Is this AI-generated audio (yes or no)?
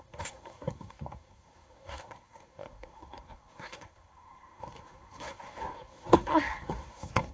yes